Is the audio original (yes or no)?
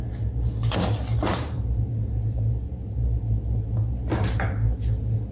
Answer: no